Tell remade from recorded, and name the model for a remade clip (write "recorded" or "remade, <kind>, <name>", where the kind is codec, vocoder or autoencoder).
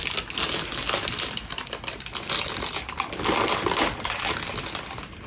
recorded